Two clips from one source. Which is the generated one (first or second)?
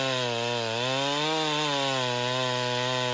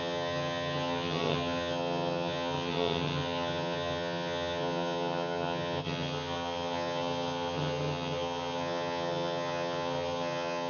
second